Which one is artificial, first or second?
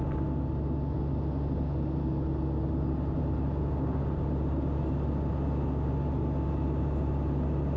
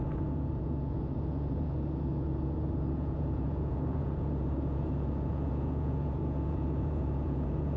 second